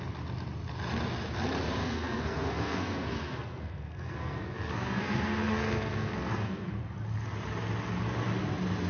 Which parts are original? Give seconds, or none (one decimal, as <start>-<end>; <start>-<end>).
0.0-1.8; 6.8-8.9